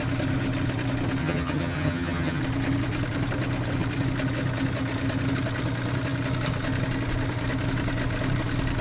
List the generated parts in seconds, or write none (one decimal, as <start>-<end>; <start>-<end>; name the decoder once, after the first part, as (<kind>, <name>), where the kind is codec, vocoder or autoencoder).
1.2-2.4 (vocoder, HiFi-GAN)